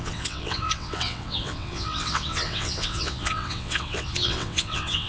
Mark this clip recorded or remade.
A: remade